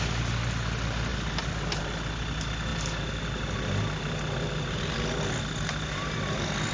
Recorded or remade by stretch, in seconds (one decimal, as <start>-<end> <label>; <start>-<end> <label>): 0.0-6.7 recorded